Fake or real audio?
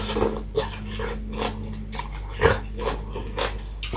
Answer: real